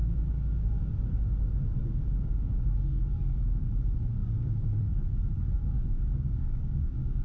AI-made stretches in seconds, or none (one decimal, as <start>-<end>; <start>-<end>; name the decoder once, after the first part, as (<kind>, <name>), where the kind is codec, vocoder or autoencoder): 0.0-0.9 (codec, DAC); 1.8-3.2; 4.2-4.8; 5.6-7.2